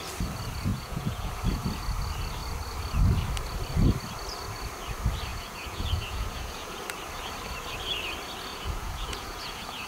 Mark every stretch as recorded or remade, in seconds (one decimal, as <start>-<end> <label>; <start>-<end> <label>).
0.0-0.7 recorded; 0.7-1.3 remade; 1.3-5.3 recorded; 5.3-6.8 remade; 6.8-8.5 recorded; 8.5-9.9 remade